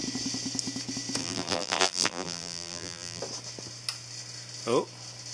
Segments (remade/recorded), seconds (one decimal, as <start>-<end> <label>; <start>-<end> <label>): 0.0-1.2 recorded; 1.2-3.2 remade; 3.2-5.3 recorded